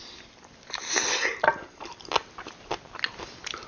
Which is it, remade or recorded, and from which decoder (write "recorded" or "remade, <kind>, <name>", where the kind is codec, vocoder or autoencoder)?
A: recorded